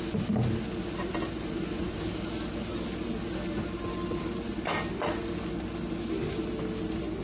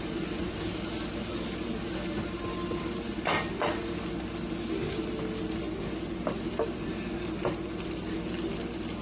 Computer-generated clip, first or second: second